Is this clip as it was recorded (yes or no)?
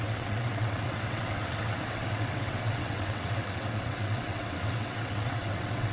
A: no